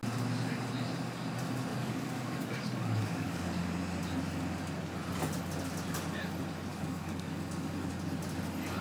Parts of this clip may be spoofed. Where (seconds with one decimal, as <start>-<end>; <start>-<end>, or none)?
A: 1.7-3.7; 6.7-7.9